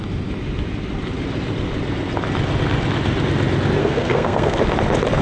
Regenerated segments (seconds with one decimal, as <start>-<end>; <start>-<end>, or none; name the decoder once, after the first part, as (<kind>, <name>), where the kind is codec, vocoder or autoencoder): 3.8-4.6 (codec, SNAC)